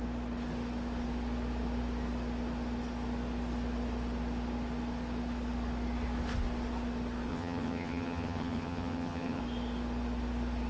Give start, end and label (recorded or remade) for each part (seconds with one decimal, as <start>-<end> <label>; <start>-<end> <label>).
0.0-7.3 recorded; 7.3-9.4 remade; 9.4-10.7 recorded